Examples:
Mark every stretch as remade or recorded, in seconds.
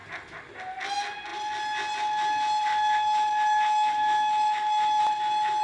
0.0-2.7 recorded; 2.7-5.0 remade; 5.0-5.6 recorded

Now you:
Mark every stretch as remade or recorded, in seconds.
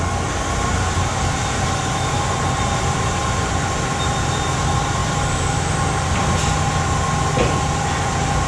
0.0-8.5 recorded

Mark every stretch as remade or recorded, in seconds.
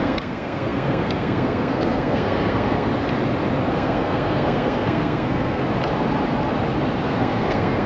0.0-2.9 remade; 2.9-3.7 recorded; 3.7-5.6 remade; 5.6-7.0 recorded; 7.0-7.9 remade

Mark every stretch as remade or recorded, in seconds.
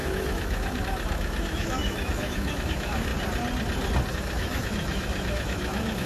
0.0-3.1 remade; 3.1-4.1 recorded; 4.1-6.1 remade